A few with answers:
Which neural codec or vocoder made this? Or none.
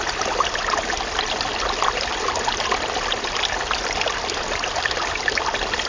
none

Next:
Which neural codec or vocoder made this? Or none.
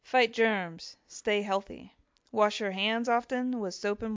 none